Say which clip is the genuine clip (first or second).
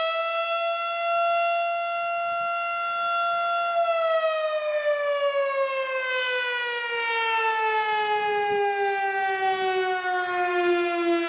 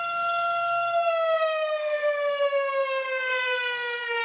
first